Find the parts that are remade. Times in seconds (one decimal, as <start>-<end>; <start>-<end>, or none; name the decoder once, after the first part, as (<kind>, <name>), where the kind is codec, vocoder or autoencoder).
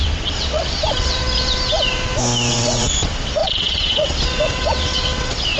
0.0-1.2 (vocoder, WaveNeXt); 2.5-5.6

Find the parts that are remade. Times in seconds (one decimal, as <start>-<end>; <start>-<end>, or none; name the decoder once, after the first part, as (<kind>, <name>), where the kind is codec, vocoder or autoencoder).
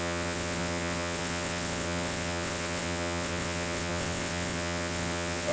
0.0-5.5 (vocoder, WaveNeXt)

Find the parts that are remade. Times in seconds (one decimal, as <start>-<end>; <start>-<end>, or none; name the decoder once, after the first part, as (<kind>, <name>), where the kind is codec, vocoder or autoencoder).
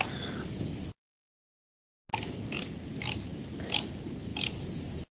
none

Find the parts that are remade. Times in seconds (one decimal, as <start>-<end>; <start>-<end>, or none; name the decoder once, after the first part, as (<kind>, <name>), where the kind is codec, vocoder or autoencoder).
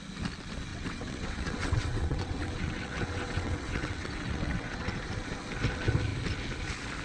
0.7-4.9 (vocoder, WaveNeXt)